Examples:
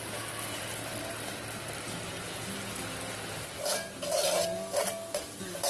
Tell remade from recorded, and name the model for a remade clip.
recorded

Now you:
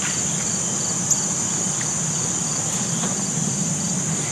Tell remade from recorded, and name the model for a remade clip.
recorded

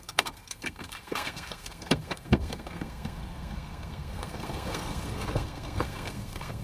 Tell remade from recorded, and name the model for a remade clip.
remade, codec, SNAC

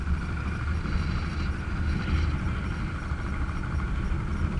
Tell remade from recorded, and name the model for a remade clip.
recorded